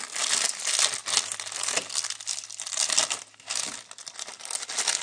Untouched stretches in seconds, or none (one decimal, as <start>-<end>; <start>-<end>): 0.0-5.0